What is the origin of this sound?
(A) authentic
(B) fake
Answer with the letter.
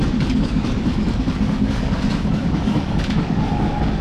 B